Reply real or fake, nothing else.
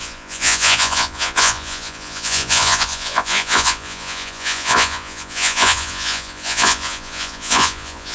fake